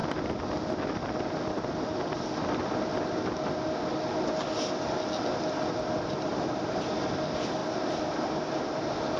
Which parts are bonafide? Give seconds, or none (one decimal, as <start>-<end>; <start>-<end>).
0.0-6.3; 6.9-7.6